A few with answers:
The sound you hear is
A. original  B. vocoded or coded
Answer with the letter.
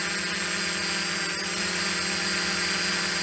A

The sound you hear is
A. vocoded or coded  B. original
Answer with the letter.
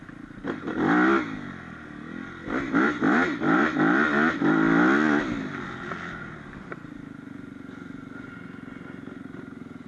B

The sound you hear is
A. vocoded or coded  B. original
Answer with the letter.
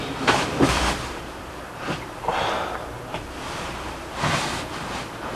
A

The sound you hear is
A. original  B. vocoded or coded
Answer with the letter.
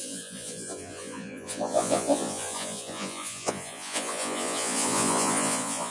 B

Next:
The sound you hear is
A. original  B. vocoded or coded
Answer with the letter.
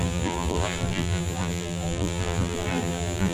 B